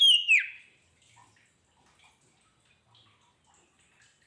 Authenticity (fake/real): real